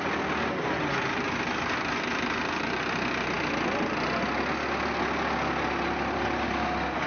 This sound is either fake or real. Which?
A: real